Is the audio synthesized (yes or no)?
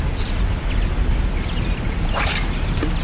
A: no